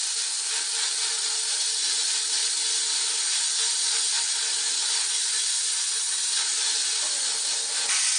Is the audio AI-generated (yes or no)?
no